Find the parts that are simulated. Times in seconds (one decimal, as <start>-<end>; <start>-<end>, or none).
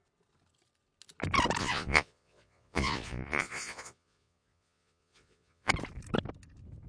1.6-5.7